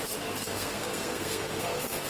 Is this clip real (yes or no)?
no